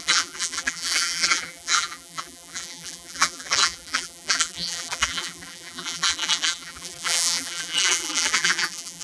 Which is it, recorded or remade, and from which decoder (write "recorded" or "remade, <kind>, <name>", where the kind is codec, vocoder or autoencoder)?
remade, vocoder, BigVGAN v2